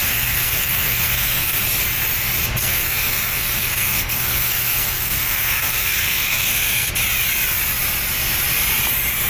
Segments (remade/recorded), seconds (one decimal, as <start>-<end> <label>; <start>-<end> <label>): 0.0-1.6 remade; 1.6-2.6 recorded; 2.6-6.9 remade; 6.9-9.3 recorded